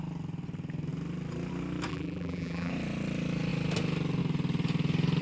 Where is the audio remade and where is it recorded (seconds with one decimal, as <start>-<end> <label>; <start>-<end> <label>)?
0.0-1.9 recorded; 1.9-2.7 remade; 2.7-5.2 recorded